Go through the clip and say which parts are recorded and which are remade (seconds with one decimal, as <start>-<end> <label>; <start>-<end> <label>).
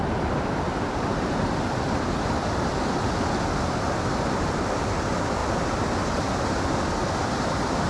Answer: 0.0-7.9 recorded